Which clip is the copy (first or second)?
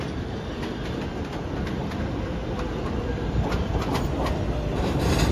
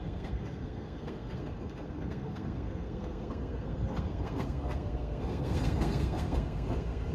second